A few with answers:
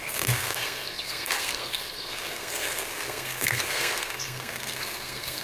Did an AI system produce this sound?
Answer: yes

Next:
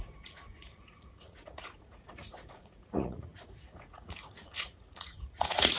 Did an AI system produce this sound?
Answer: yes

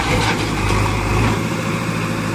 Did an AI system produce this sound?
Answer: yes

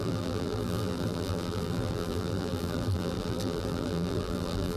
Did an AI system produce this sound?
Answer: yes